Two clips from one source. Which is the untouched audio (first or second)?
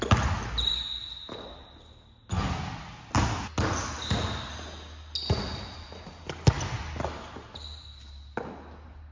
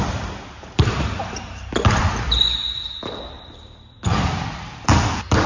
first